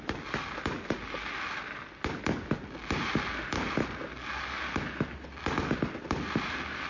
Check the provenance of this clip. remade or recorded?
recorded